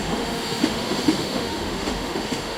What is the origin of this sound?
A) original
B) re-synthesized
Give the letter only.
B